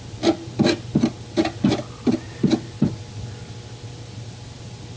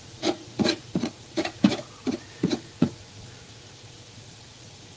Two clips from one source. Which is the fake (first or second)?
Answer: second